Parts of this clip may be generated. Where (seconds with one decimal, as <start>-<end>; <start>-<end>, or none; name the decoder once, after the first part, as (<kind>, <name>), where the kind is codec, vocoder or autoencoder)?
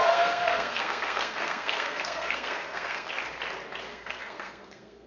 0.0-3.1 (codec, SNAC); 3.9-5.1